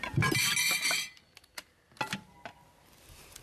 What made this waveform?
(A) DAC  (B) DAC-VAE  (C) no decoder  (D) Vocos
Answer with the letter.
C